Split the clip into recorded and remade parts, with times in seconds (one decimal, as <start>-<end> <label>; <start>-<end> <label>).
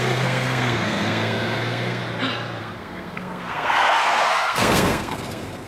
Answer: 0.0-2.0 remade; 2.0-2.6 recorded; 2.6-5.7 remade